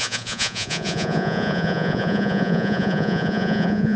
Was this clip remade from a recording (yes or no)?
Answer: yes